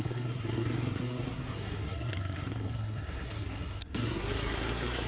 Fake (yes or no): yes